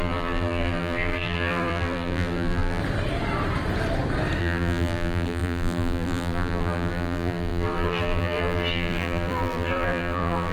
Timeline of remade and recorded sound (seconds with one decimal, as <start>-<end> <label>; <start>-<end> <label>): 0.0-2.8 remade; 2.8-4.4 recorded; 4.4-10.5 remade